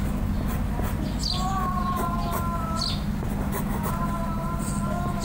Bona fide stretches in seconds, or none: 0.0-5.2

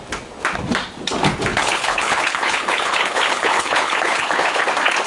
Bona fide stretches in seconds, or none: 0.0-1.5; 4.6-5.1

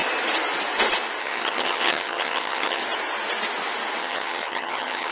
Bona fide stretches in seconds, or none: 0.0-1.2; 2.8-4.0

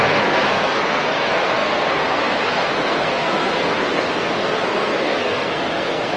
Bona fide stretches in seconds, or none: none

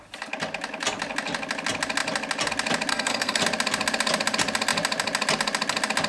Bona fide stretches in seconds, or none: 0.0-2.9; 3.4-6.1